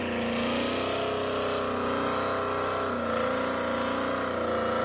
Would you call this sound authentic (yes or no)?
yes